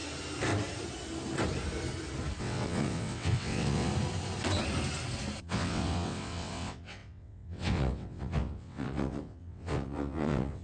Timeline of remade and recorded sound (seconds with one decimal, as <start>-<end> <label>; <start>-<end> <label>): 0.0-2.4 recorded; 2.4-3.9 remade; 3.9-5.4 recorded; 5.4-10.6 remade